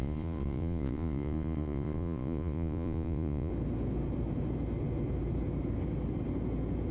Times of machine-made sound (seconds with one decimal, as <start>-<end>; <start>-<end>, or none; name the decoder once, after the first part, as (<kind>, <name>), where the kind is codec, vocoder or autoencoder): 0.0-3.5 (vocoder, Vocos)